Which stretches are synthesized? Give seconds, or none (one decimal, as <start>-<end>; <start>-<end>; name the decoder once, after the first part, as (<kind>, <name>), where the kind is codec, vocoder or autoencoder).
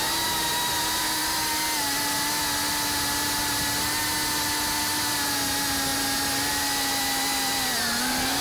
none